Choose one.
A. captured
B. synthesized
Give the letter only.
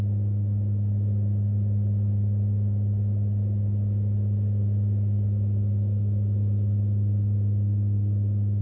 B